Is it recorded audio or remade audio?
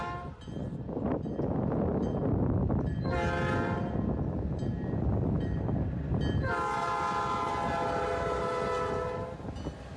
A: recorded